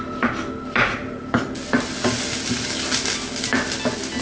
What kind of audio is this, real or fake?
real